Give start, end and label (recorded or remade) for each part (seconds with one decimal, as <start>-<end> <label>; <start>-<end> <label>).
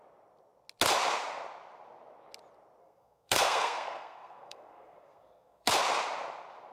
0.0-2.8 recorded; 2.8-5.7 remade; 5.7-6.7 recorded